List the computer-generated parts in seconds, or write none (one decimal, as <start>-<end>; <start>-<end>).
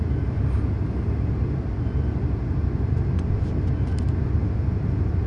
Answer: none